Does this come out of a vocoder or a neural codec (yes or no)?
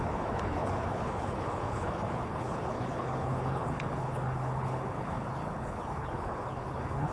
yes